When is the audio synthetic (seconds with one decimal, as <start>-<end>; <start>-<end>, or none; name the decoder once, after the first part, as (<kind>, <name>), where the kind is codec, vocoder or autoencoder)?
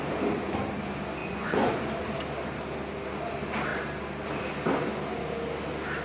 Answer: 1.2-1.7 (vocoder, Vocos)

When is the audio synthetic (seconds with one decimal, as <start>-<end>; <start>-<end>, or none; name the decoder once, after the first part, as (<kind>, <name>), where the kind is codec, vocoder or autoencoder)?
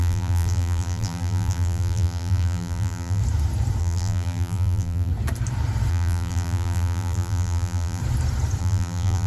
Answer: 0.0-3.2 (vocoder, BigVGAN v2); 3.8-5.1; 5.9-8.0; 8.6-9.3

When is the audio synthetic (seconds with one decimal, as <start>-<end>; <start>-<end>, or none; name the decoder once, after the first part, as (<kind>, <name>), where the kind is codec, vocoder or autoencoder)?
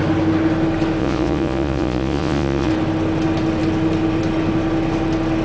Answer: 1.0-2.7 (vocoder, Vocos)